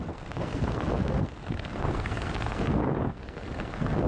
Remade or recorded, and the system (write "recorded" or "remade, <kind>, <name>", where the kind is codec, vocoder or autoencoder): remade, codec, SNAC